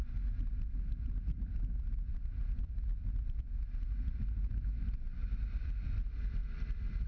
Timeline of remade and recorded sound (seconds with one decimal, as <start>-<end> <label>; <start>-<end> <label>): 0.0-2.1 recorded; 2.1-3.5 remade; 3.5-5.2 recorded; 5.2-5.8 remade; 5.8-6.4 recorded; 6.4-7.1 remade